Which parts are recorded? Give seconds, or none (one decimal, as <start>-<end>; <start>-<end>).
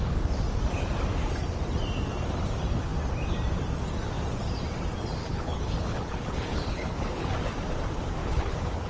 0.0-5.2; 7.3-8.2